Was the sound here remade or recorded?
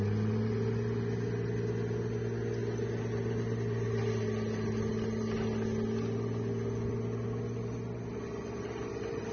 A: recorded